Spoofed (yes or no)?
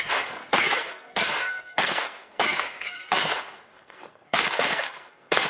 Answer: yes